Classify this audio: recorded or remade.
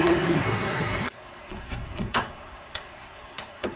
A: remade